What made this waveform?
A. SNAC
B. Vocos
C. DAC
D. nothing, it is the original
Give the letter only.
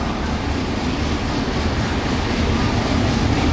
D